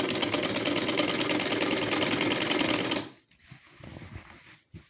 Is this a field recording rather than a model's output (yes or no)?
yes